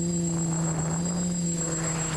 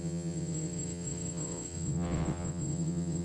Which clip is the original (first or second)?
first